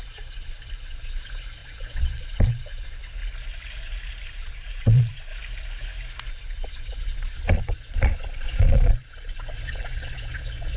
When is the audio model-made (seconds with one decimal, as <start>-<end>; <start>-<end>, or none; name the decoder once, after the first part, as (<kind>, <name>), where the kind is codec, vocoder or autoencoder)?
0.0-3.2 (vocoder, Vocos); 4.3-5.3; 6.3-10.8